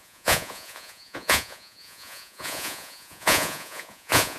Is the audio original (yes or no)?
no